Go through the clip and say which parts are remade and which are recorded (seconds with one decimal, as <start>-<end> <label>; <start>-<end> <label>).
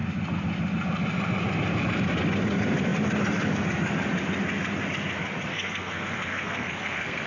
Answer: 0.0-5.5 recorded; 5.5-7.3 remade